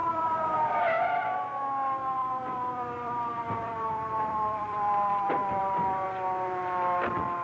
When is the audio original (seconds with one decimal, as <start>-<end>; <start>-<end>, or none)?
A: 0.8-2.2; 5.6-7.4